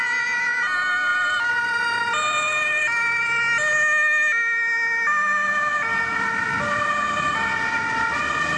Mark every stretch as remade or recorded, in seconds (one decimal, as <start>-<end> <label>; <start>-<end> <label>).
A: 0.0-1.1 recorded; 1.1-3.4 remade; 3.4-5.9 recorded; 5.9-6.9 remade; 6.9-8.6 recorded